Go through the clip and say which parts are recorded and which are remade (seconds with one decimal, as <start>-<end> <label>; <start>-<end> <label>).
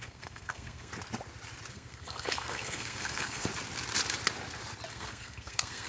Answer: 0.0-0.9 remade; 0.9-1.7 recorded; 1.7-3.5 remade; 3.5-4.9 recorded; 4.9-5.9 remade